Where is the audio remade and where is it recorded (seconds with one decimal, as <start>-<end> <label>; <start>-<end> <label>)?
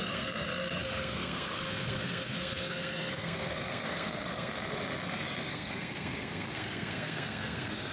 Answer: 0.0-4.5 remade; 4.5-5.5 recorded; 5.5-7.9 remade